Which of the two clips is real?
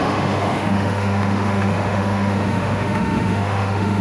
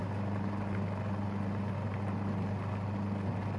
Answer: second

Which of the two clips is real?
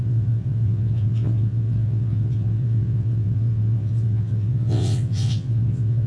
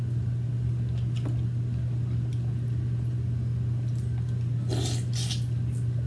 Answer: second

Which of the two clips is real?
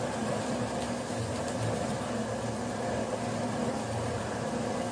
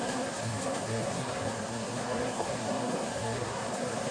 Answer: first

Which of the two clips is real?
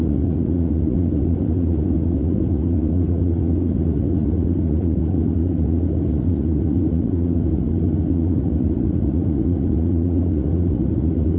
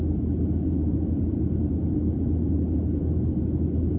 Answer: second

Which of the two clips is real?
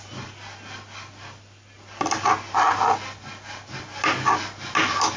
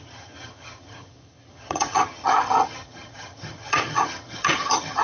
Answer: first